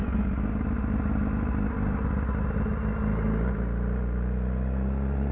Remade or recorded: recorded